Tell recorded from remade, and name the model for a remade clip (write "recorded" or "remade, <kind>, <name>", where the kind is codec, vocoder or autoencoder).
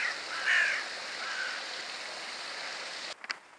recorded